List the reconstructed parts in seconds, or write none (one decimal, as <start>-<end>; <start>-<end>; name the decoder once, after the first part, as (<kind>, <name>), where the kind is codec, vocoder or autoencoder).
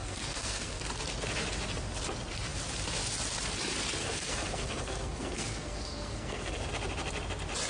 0.0-0.8 (codec, SNAC); 4.0-6.7